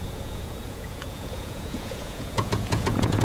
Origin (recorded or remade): remade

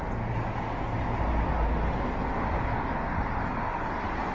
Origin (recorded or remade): recorded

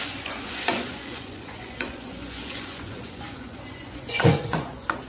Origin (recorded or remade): remade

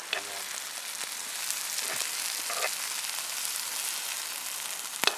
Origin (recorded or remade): recorded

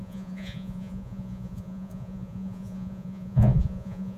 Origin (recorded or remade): remade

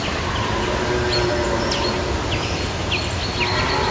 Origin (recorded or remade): recorded